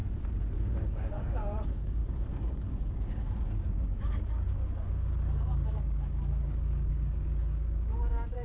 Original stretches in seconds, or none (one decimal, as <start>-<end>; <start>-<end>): 0.0-0.6